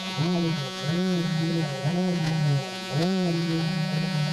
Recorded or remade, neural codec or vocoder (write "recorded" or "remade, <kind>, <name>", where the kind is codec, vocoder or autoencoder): remade, vocoder, Vocos